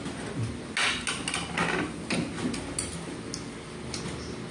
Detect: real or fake real